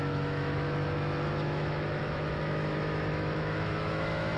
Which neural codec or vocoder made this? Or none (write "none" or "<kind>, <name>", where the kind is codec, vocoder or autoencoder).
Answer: autoencoder, DAC-VAE